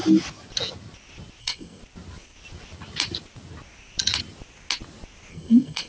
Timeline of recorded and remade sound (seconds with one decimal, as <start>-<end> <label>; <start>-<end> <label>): 0.0-1.4 recorded; 1.4-1.8 remade; 1.8-5.3 recorded; 5.3-5.9 remade